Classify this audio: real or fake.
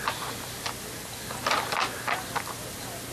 real